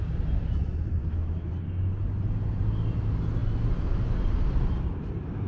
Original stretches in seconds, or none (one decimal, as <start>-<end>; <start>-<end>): 0.0-1.0; 1.5-5.5